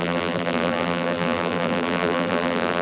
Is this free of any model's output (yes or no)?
no